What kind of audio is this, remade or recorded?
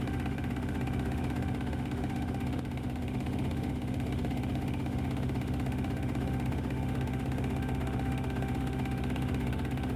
remade